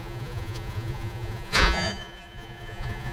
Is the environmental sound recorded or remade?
remade